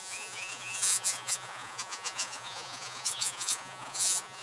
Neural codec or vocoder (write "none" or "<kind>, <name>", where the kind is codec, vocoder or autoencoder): vocoder, Vocos